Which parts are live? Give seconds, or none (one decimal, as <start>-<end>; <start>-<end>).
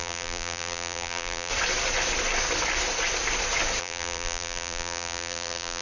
1.5-3.8